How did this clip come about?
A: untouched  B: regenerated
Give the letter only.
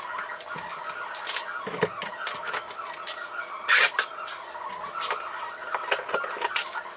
A